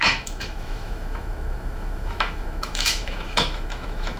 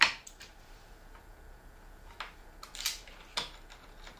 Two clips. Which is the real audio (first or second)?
second